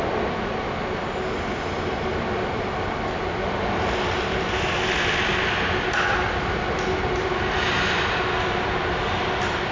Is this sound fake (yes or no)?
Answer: no